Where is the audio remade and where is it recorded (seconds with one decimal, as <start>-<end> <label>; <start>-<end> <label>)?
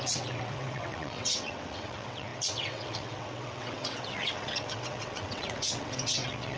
0.0-6.6 remade